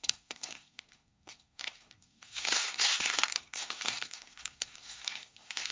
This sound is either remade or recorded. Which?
remade